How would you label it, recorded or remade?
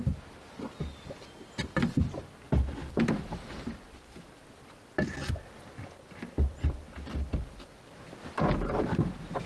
recorded